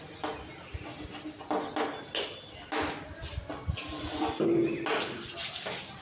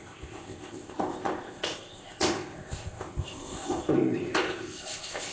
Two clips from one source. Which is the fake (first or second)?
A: second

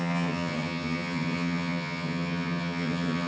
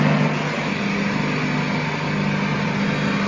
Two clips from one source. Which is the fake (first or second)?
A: first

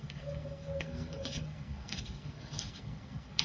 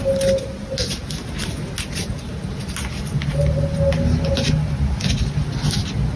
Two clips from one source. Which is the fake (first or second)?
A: first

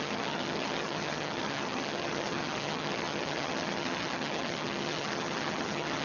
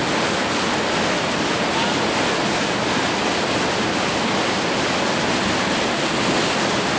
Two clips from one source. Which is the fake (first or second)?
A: first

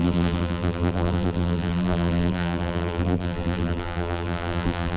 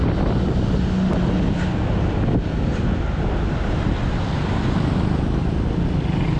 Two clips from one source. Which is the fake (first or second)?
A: first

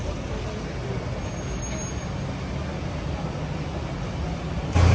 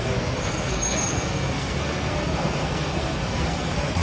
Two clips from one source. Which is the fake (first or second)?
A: second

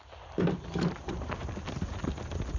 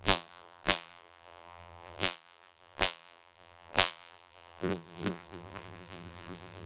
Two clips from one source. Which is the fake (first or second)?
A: second